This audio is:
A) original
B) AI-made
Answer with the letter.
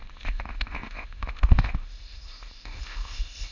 B